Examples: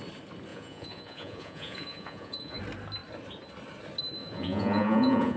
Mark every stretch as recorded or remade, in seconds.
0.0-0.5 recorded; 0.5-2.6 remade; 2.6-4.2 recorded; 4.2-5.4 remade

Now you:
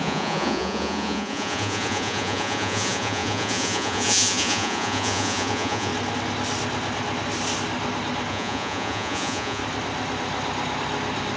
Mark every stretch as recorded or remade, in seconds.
0.0-5.9 remade; 5.9-8.3 recorded; 8.3-9.6 remade; 9.6-11.4 recorded

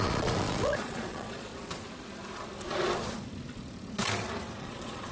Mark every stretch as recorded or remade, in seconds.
0.0-1.5 remade; 1.5-4.6 recorded; 4.6-5.1 remade

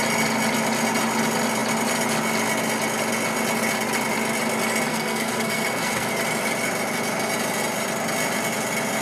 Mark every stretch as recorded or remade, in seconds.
0.0-4.9 recorded; 4.9-6.1 remade; 6.1-9.0 recorded